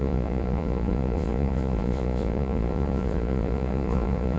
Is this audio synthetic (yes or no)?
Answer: yes